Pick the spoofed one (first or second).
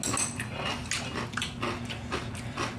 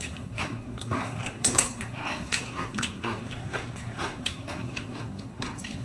second